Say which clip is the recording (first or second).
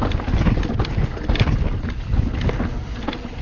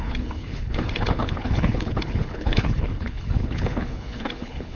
first